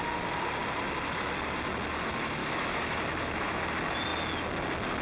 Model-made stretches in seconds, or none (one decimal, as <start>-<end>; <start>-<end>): 2.4-3.6